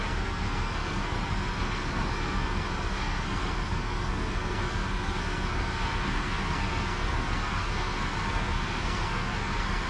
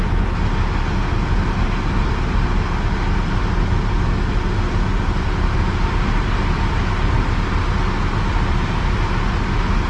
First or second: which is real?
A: second